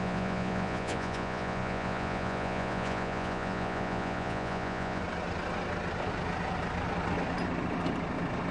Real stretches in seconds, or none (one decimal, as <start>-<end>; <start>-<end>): 5.0-8.5